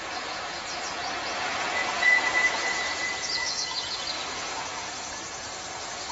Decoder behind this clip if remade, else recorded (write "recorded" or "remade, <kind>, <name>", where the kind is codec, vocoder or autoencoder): remade, vocoder, Vocos